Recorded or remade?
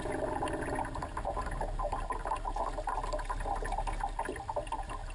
recorded